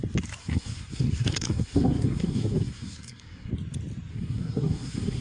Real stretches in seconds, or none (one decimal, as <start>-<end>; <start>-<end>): 0.0-0.4; 3.5-4.1